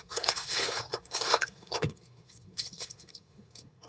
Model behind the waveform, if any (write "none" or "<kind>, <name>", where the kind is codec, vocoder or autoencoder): codec, SNAC